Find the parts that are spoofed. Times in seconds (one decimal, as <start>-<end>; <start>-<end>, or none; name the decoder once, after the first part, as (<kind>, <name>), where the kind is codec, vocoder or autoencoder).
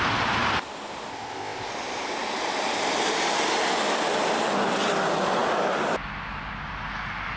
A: 1.1-1.7 (codec, ZipCodec)